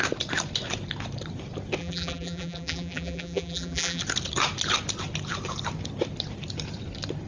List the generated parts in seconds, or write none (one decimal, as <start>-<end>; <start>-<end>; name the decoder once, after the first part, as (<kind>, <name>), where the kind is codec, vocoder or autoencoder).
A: 1.8-4.0 (vocoder, BigVGAN v2)